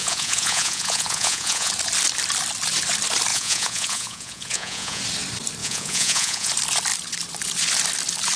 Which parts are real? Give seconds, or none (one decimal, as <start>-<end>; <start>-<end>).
1.7-3.3; 5.0-5.6; 6.5-8.4